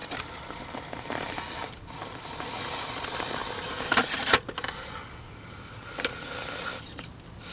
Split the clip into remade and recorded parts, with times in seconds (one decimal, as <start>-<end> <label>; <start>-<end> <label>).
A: 0.0-0.6 remade; 0.6-7.5 recorded